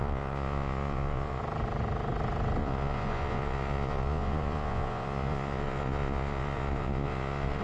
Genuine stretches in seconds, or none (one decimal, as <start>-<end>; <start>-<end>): 1.4-2.6